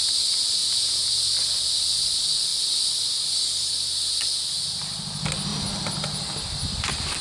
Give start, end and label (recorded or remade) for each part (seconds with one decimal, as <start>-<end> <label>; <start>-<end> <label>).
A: 0.0-0.6 recorded; 0.6-1.1 remade; 1.1-7.2 recorded

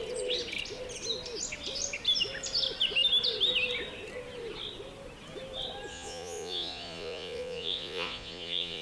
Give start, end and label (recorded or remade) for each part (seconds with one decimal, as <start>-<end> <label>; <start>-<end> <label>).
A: 0.0-5.9 recorded; 5.9-8.8 remade

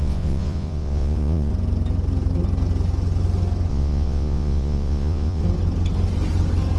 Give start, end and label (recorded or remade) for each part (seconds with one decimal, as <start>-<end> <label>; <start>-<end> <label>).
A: 0.0-1.5 remade; 1.5-3.7 recorded; 3.7-5.4 remade; 5.4-6.8 recorded

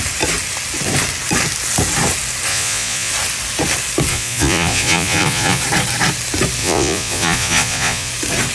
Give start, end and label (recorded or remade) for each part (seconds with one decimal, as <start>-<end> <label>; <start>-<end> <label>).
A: 0.0-2.5 recorded; 2.5-3.1 remade; 3.1-4.1 recorded; 4.1-5.6 remade; 5.6-6.6 recorded; 6.6-8.1 remade; 8.1-8.5 recorded

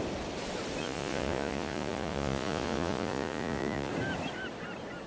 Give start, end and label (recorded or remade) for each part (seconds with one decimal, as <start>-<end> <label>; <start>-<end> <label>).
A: 0.0-0.8 recorded; 0.8-3.9 remade; 3.9-5.1 recorded

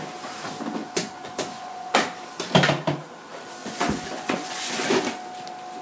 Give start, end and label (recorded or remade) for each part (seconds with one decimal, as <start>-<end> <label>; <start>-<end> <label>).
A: 0.0-0.8 recorded; 0.8-1.9 remade; 1.9-3.6 recorded; 3.6-5.0 remade; 5.0-5.8 recorded

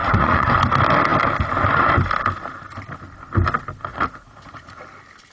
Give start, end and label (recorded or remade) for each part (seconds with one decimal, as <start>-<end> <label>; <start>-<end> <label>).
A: 0.0-0.5 remade; 0.5-3.9 recorded; 3.9-4.8 remade; 4.8-5.3 recorded